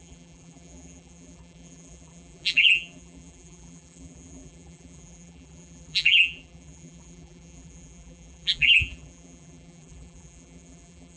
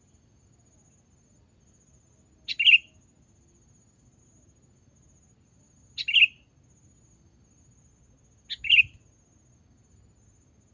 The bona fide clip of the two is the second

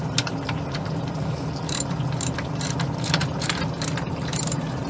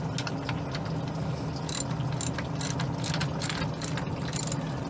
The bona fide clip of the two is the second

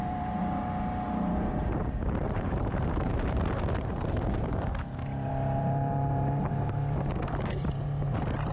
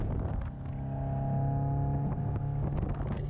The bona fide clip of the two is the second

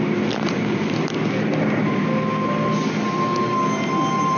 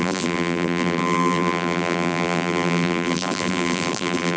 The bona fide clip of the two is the first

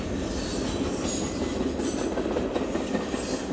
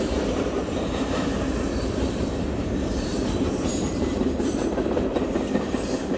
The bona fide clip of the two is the first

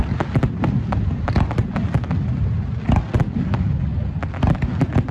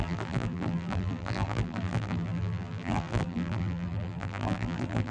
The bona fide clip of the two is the first